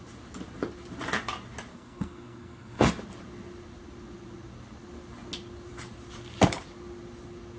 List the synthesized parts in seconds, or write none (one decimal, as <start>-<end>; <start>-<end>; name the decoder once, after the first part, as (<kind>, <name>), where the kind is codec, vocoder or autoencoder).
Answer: 1.7-2.9 (codec, SNAC)